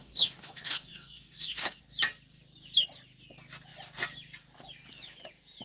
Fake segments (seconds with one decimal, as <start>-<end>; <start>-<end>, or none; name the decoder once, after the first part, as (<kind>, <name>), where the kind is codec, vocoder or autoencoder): 0.0-1.8 (codec, DAC)